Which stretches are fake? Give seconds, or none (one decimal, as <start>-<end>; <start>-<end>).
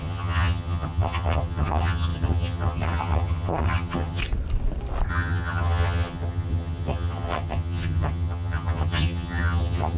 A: 0.0-4.2; 5.1-10.0